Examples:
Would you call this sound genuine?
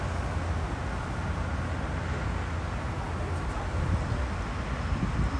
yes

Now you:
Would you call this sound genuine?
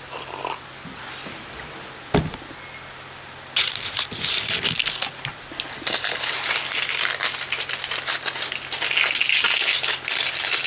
yes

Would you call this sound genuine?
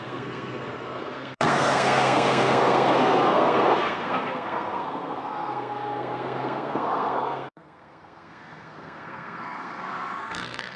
no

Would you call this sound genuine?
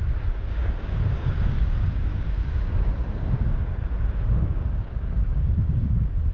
no